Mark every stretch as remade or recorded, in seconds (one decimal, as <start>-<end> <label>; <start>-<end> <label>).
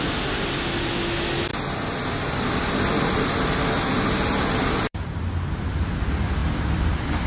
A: 0.0-1.5 recorded; 1.5-5.9 remade; 5.9-6.4 recorded; 6.4-7.3 remade